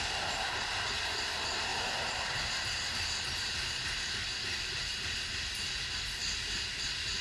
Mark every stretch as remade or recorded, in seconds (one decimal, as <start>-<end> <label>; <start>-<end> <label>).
0.0-1.7 recorded; 1.7-4.7 remade; 4.7-7.2 recorded

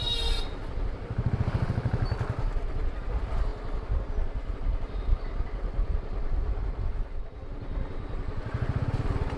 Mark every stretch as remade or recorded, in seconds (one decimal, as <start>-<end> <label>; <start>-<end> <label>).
0.0-9.4 recorded

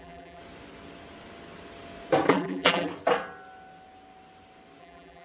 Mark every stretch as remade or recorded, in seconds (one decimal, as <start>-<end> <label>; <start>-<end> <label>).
0.0-0.4 remade; 0.4-2.3 recorded; 2.3-2.9 remade; 2.9-4.8 recorded; 4.8-5.2 remade

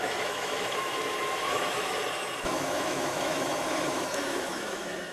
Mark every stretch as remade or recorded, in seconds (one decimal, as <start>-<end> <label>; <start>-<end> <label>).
0.0-2.0 remade; 2.0-2.5 recorded; 2.5-5.1 remade

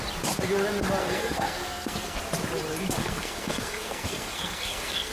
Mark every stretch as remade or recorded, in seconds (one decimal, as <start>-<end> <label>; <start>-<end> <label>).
0.0-1.0 recorded; 1.0-2.2 remade; 2.2-3.0 recorded; 3.0-5.1 remade

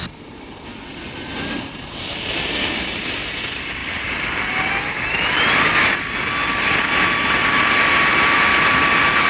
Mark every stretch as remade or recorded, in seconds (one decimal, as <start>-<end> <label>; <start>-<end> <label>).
0.0-0.7 recorded; 0.7-1.7 remade; 1.7-3.8 recorded; 3.8-4.8 remade; 4.8-9.3 recorded

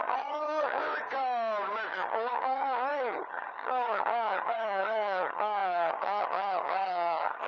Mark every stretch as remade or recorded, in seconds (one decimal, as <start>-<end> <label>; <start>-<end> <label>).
0.0-0.8 remade; 0.8-1.9 recorded; 1.9-7.5 remade

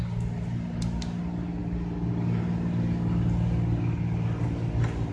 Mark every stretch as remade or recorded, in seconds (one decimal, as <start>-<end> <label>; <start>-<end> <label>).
0.0-5.1 recorded